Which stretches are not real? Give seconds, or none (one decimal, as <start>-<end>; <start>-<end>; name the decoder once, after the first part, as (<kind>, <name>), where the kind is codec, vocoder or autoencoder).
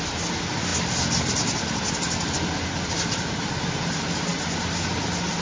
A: none